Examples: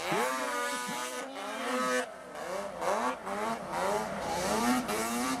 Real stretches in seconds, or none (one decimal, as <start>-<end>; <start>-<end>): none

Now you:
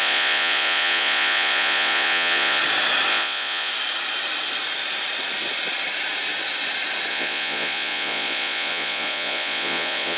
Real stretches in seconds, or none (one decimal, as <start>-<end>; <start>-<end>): 2.6-3.1; 3.7-7.1

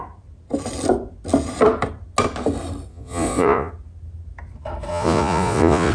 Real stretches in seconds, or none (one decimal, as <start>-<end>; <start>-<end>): 0.0-2.9; 3.7-4.9